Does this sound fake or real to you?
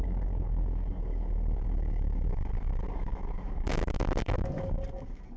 fake